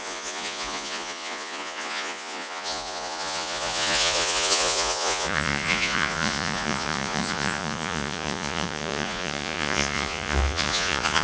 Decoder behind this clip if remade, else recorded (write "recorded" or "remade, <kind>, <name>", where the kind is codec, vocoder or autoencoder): remade, vocoder, Vocos